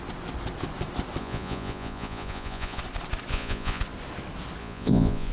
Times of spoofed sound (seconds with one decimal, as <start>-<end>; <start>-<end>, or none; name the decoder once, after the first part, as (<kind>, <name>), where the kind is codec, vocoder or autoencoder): 1.2-2.8 (vocoder, Vocos); 3.3-3.8; 4.6-5.3